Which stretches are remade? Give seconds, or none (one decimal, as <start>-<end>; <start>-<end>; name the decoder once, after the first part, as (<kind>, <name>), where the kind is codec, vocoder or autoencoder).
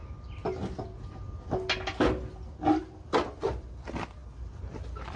none